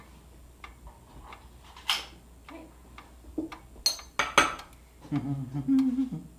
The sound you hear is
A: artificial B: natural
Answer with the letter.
B